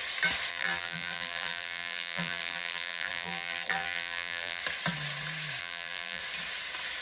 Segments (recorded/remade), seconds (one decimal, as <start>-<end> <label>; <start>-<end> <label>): 0.0-0.5 recorded; 0.5-4.6 remade; 4.6-5.6 recorded; 5.6-6.2 remade; 6.2-7.0 recorded